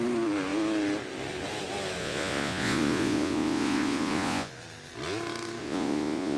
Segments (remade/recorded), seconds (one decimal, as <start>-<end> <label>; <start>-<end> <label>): 0.0-2.0 recorded; 2.0-4.5 remade; 4.5-5.6 recorded; 5.6-6.4 remade